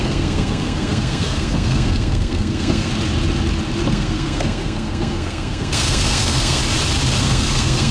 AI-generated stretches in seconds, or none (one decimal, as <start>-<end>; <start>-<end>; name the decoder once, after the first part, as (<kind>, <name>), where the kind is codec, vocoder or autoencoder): 0.0-2.9 (codec, SNAC); 3.9-6.6; 7.2-7.9